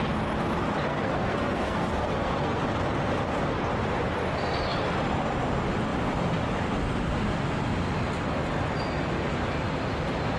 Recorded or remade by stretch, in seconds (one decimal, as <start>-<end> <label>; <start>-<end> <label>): 0.0-0.9 recorded; 0.9-2.6 remade; 2.6-10.4 recorded